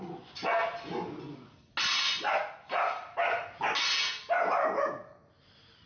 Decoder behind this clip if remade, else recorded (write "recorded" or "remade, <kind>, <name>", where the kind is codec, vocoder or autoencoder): recorded